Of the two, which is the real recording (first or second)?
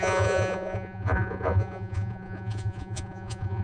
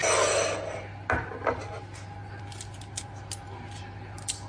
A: second